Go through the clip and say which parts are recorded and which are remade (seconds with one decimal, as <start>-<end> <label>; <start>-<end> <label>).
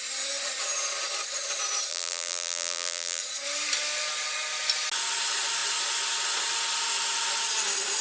0.0-1.9 recorded; 1.9-3.2 remade; 3.2-8.0 recorded